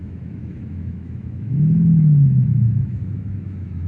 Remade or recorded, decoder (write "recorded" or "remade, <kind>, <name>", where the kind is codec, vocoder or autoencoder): remade, autoencoder, DAC-VAE